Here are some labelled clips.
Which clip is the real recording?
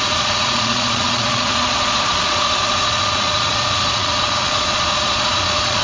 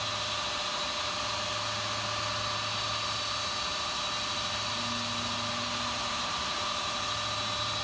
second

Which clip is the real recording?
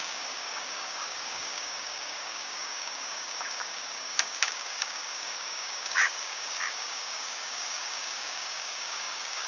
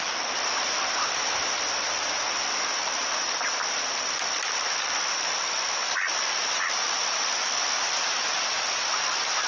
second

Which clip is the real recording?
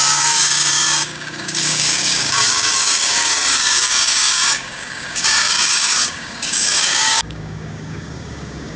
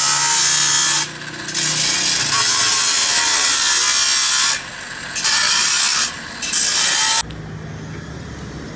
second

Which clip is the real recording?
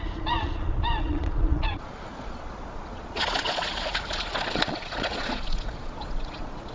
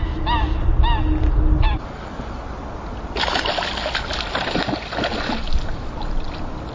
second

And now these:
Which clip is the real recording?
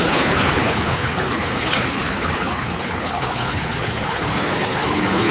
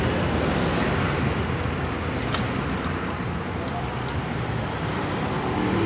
second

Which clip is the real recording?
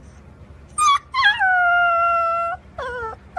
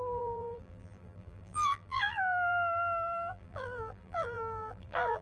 first